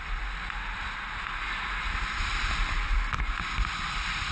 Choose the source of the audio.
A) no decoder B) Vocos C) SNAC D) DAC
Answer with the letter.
A